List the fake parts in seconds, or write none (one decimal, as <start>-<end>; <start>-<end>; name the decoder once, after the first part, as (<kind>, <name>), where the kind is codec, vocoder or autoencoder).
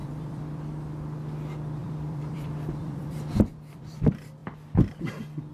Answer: 0.0-0.7 (vocoder, BigVGAN v2); 1.8-4.0